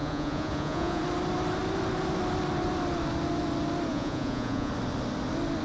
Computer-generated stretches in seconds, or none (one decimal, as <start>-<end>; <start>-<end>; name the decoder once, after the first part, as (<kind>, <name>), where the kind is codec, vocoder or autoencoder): 0.0-1.0 (vocoder, Vocos); 3.9-4.7

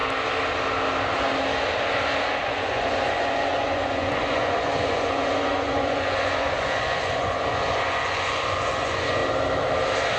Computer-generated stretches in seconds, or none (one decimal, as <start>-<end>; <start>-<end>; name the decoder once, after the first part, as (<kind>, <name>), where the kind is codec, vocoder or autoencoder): 2.4-9.2 (vocoder, Vocos)